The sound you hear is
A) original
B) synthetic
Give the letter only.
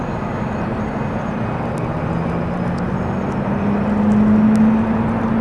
A